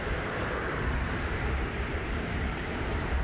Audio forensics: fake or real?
fake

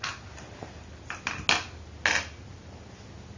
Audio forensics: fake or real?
real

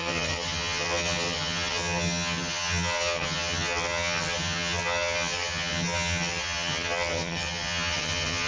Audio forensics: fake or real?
fake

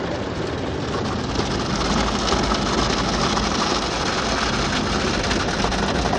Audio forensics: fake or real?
real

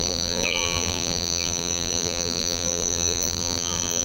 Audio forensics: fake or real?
fake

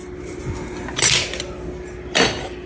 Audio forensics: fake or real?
real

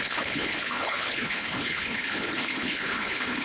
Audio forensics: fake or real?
fake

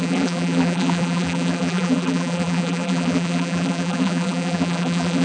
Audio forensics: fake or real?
fake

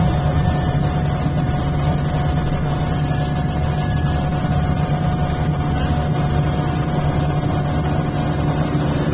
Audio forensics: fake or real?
real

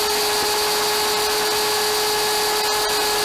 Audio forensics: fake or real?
real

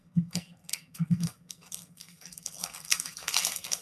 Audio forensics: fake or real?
fake